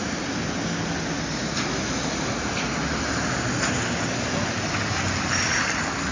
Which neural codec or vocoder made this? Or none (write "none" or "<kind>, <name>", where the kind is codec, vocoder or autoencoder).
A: none